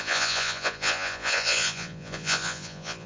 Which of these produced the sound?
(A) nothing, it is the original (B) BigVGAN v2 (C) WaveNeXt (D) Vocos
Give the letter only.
D